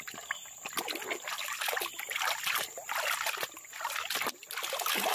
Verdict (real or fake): real